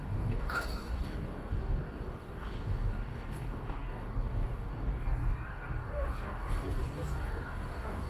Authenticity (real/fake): fake